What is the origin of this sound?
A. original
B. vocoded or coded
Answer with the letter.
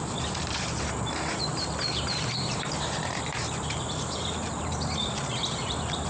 B